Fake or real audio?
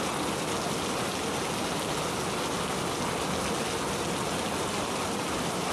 real